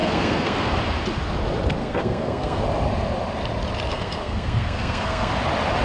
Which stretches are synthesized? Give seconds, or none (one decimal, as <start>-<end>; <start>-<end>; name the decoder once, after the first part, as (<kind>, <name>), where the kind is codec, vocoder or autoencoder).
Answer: 0.0-0.8 (codec, SNAC); 1.8-2.6; 3.9-5.3

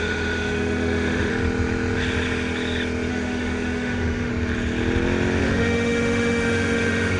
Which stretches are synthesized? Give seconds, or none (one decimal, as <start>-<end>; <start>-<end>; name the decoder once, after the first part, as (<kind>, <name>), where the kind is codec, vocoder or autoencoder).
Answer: 0.0-1.3 (autoencoder, DAC-VAE); 3.1-4.3; 5.4-7.2

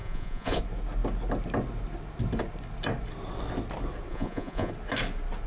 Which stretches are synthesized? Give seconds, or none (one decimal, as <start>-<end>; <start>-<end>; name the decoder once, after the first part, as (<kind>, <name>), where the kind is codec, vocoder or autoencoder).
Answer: 0.0-0.6 (vocoder, Vocos); 4.1-4.7

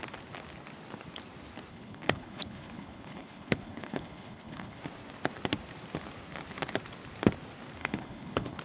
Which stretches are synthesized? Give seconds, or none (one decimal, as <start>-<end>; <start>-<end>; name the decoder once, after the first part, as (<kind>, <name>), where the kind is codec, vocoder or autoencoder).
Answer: 1.7-4.8 (codec, HILCodec); 7.8-8.6

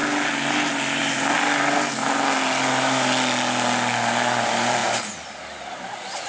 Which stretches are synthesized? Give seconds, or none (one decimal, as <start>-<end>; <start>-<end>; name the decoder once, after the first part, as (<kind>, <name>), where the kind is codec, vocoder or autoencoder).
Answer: none

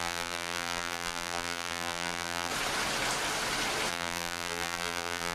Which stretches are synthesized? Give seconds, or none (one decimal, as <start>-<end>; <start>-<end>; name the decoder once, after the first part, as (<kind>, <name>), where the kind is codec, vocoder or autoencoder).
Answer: 0.0-2.5 (vocoder, BigVGAN v2); 3.9-5.3